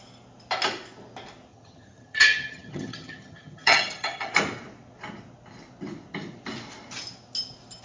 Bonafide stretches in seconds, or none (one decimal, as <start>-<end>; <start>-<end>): 0.0-1.5; 4.3-7.8